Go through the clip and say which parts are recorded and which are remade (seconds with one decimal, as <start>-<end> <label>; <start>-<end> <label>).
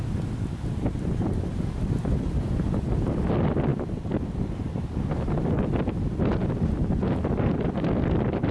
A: 0.0-3.7 remade; 3.7-6.5 recorded; 6.5-8.5 remade